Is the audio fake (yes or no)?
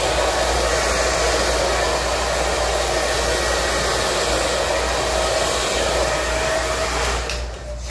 no